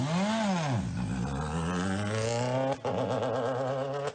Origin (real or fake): real